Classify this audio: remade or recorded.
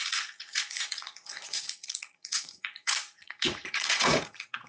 remade